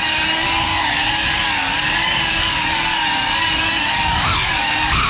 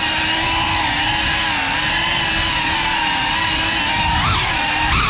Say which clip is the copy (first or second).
first